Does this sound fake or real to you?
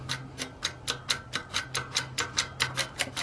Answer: real